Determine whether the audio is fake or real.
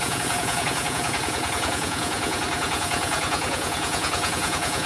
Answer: fake